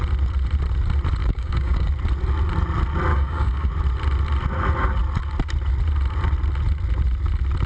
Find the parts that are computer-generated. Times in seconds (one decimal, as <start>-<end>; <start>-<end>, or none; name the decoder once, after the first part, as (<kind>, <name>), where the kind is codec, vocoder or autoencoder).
1.2-1.9 (codec, DAC); 3.1-3.7